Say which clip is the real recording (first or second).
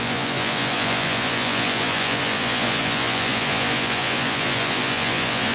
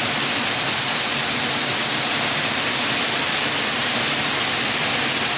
second